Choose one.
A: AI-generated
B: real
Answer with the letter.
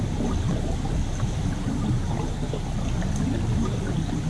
B